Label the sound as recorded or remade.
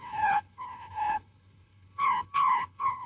remade